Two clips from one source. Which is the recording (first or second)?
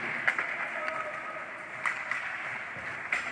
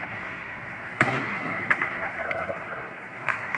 first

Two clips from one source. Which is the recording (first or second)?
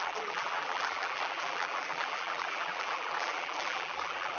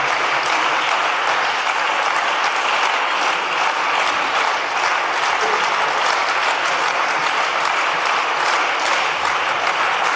second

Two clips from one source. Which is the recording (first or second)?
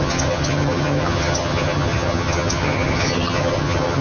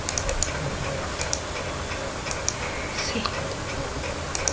second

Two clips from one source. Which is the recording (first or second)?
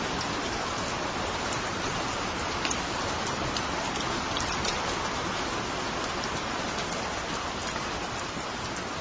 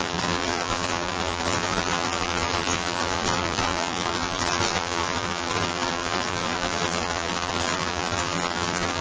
first